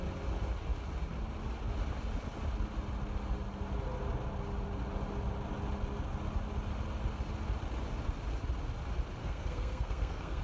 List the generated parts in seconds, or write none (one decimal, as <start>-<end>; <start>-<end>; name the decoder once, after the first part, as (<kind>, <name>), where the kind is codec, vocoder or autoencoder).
9.2-10.4 (codec, SNAC)